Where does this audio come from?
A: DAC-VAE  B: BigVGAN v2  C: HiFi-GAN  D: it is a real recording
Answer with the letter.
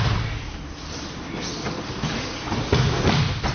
D